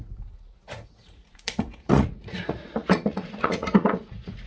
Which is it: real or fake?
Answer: fake